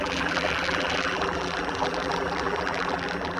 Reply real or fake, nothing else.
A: fake